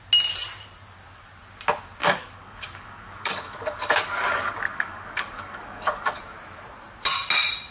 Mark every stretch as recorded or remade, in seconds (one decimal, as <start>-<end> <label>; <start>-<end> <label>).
0.0-2.0 recorded; 2.0-3.8 remade; 3.8-4.7 recorded; 4.7-6.2 remade; 6.2-7.7 recorded